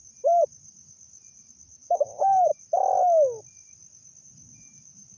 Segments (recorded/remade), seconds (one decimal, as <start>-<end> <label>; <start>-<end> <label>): 0.0-2.5 remade; 2.5-4.2 recorded; 4.2-5.2 remade